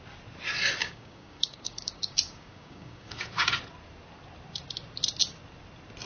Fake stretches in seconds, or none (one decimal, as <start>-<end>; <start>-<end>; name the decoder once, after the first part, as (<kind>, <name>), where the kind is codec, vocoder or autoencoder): 0.8-3.6 (codec, DAC)